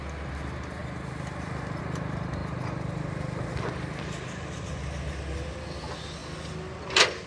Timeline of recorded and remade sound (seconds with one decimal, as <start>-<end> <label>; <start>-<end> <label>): 0.0-7.3 recorded